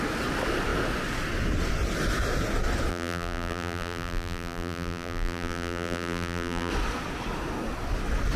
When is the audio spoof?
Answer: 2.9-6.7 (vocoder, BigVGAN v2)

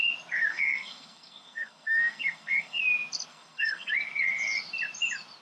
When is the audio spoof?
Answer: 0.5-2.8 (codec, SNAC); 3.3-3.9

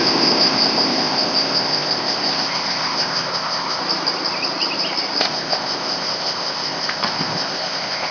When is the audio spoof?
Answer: 0.0-3.8 (codec, ZipCodec); 5.2-8.1

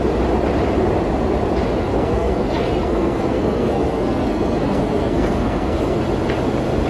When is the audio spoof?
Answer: 1.9-6.0 (codec, SNAC)

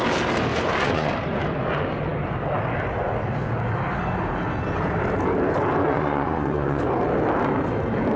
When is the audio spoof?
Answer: 0.5-1.1 (vocoder, Vocos); 5.8-6.8

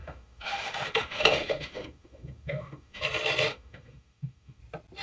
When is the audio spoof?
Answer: 0.0-3.0 (autoencoder, DAC-VAE); 3.5-4.6